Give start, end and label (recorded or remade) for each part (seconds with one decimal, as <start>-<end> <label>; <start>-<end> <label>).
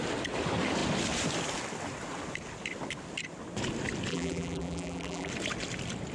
0.0-4.1 recorded; 4.1-5.3 remade; 5.3-6.1 recorded